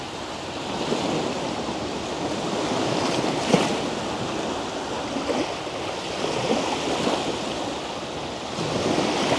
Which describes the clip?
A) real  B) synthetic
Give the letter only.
A